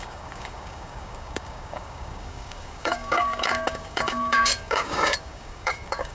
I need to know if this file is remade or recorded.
remade